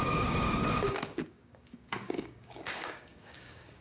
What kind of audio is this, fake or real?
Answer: fake